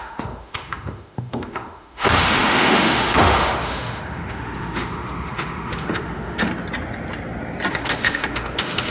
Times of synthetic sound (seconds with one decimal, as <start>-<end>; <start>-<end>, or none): 0.0-6.5; 7.7-8.9